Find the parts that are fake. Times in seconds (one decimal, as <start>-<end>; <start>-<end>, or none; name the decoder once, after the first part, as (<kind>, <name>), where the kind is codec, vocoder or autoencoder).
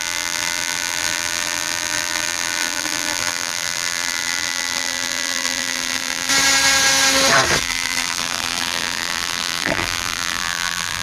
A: 0.0-6.3 (vocoder, BigVGAN v2); 7.6-11.0